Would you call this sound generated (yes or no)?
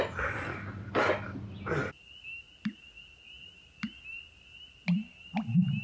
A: no